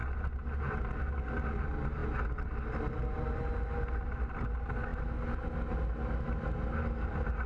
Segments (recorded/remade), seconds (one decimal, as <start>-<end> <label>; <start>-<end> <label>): 0.0-7.5 recorded